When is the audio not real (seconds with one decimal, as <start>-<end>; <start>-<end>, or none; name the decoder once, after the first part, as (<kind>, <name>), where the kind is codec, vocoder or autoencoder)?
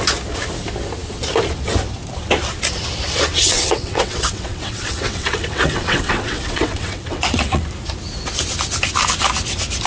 3.1-7.6 (vocoder, WaveNeXt)